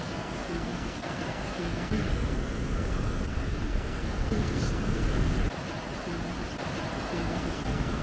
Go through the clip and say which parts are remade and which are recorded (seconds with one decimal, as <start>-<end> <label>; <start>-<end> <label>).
0.0-5.4 remade; 5.4-6.9 recorded; 6.9-8.0 remade